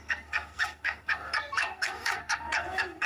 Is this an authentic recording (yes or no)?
no